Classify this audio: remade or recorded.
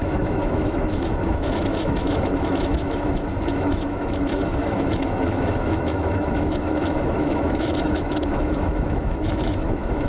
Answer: remade